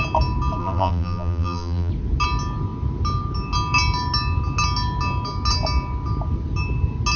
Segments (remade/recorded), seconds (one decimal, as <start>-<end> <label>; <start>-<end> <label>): 0.0-0.6 recorded; 0.6-1.9 remade; 1.9-7.2 recorded